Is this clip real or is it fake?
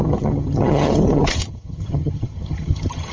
fake